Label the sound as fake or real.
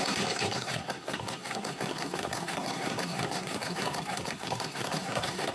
fake